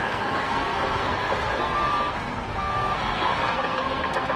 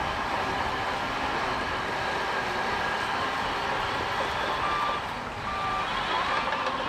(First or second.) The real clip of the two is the second